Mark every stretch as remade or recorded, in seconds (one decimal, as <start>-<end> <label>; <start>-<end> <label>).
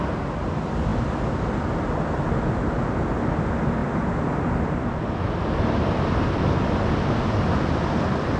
0.0-8.4 recorded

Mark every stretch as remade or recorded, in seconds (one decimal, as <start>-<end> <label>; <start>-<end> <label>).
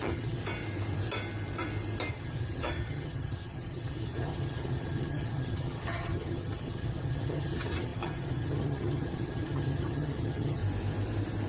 0.0-0.4 remade; 0.4-2.1 recorded; 2.1-10.6 remade; 10.6-11.5 recorded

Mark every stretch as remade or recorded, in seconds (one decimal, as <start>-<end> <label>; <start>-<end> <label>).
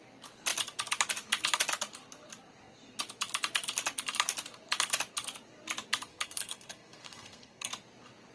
0.0-6.1 recorded; 6.1-7.7 remade; 7.7-8.3 recorded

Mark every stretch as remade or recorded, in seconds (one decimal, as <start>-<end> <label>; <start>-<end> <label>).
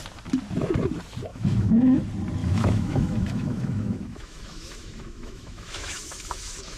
0.0-1.3 recorded; 1.3-2.0 remade; 2.0-2.4 recorded; 2.4-6.8 remade